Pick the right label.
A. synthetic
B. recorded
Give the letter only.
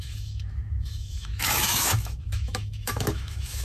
A